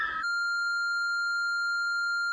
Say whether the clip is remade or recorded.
recorded